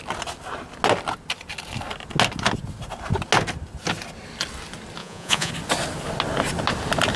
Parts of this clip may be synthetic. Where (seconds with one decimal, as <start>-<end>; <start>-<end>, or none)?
5.0-5.5